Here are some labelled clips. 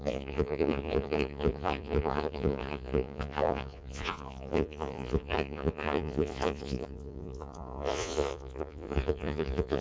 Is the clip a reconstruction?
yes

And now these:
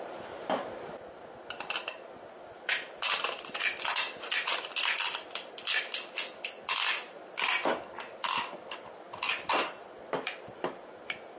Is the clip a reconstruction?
no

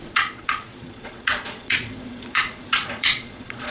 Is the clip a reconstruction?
yes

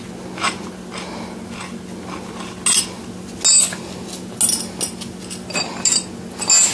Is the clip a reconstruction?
no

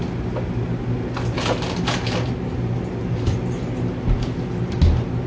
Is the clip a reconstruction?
no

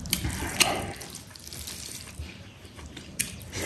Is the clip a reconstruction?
no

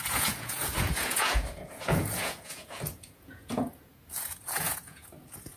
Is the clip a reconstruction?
yes